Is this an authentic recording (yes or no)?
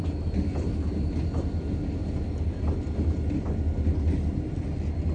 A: yes